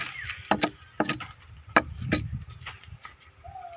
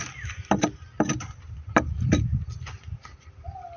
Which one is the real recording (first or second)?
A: first